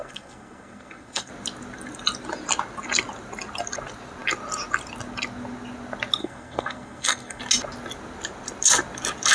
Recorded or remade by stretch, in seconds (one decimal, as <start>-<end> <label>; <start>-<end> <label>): 0.0-1.3 remade; 1.3-6.2 recorded; 6.2-7.4 remade; 7.4-9.3 recorded